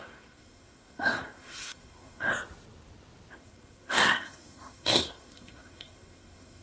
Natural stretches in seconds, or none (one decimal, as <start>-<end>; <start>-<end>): 2.3-3.3

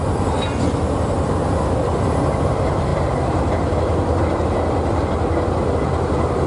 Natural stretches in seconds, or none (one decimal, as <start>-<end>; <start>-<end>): 0.0-6.5

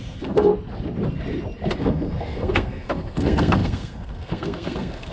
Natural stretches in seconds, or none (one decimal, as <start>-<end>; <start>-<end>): 0.5-1.8

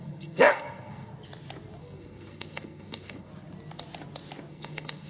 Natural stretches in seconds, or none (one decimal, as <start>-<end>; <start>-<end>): 1.1-1.8; 3.3-4.5